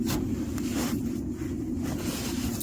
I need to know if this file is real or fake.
real